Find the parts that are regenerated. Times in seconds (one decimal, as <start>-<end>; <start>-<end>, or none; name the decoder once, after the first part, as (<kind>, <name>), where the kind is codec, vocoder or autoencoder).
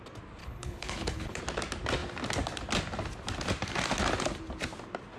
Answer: 0.4-1.4 (codec, HILCodec)